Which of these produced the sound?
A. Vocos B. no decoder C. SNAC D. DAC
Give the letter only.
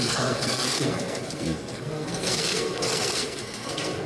C